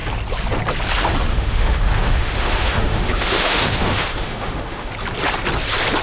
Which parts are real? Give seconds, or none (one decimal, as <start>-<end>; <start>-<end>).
0.0-1.3; 4.9-6.0